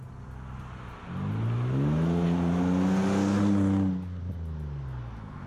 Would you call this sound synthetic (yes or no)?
no